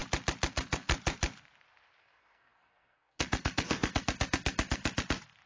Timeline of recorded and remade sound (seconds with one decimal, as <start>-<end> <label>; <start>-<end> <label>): 0.0-0.5 recorded; 0.5-0.9 remade; 0.9-2.0 recorded; 2.0-4.8 remade; 4.8-5.5 recorded

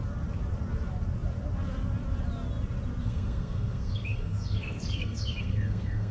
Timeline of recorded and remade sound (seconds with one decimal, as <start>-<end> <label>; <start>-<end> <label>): 0.0-3.0 recorded; 3.0-6.1 remade

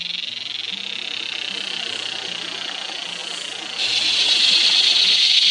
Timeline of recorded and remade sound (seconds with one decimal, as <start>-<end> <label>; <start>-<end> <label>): 0.0-5.5 recorded

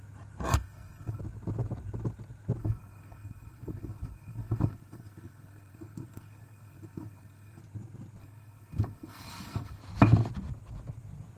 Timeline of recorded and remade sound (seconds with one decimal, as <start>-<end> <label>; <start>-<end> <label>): 0.0-0.5 recorded; 0.5-1.2 remade; 1.2-2.6 recorded; 2.6-7.6 remade; 7.6-8.2 recorded; 8.2-9.8 remade; 9.8-11.4 recorded

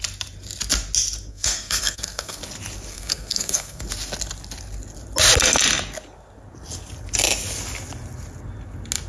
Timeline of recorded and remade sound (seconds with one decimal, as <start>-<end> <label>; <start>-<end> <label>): 0.0-1.3 recorded; 1.3-2.4 remade; 2.4-2.9 recorded; 2.9-3.8 remade; 3.8-9.1 recorded